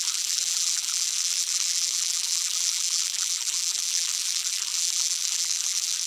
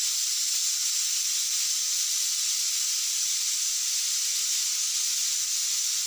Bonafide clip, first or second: second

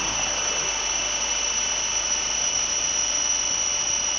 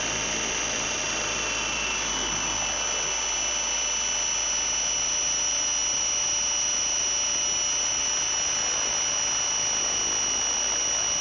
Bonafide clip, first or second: second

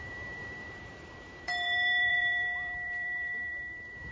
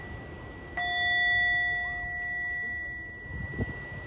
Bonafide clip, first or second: second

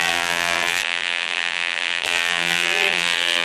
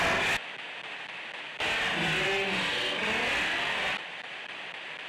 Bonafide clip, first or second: second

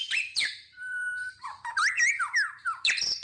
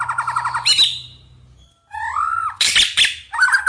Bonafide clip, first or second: second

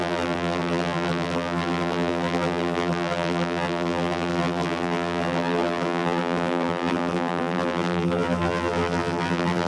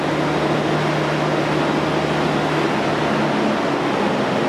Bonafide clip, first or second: second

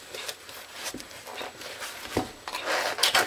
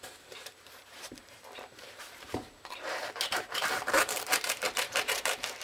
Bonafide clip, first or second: first